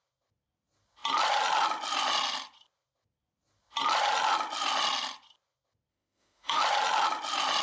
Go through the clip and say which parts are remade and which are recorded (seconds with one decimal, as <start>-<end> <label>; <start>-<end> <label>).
0.0-5.9 recorded; 5.9-6.6 remade; 6.6-7.6 recorded